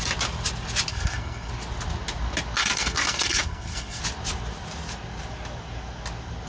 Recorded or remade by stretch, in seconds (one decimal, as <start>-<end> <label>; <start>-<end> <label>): 0.0-0.9 recorded; 0.9-1.5 remade; 1.5-2.6 recorded; 2.6-4.0 remade; 4.0-6.5 recorded